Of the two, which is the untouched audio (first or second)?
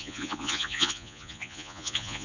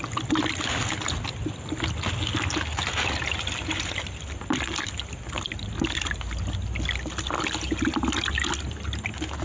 second